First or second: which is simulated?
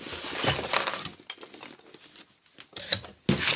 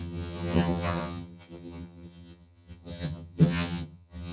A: second